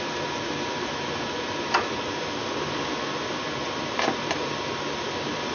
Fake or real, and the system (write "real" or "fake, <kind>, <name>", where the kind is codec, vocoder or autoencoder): fake, vocoder, BigVGAN v2